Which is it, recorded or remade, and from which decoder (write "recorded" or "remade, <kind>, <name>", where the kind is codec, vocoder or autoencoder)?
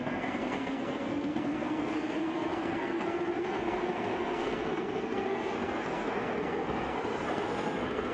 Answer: remade, codec, SNAC